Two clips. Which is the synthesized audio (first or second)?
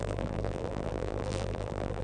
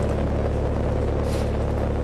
first